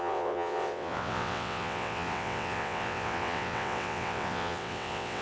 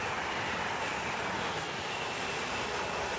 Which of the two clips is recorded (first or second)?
second